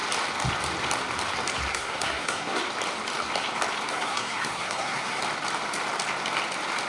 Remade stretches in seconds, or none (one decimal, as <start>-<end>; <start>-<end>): 1.7-2.6; 3.9-5.2